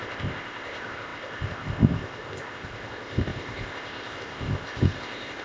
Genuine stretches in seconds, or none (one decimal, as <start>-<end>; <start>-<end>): none